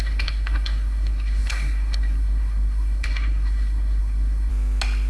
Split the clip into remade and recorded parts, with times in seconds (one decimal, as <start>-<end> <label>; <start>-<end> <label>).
0.0-4.5 remade; 4.5-5.1 recorded